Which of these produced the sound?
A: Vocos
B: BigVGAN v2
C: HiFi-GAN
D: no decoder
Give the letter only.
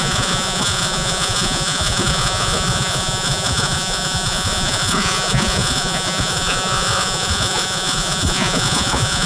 A